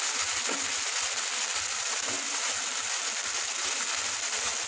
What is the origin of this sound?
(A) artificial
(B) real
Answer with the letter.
B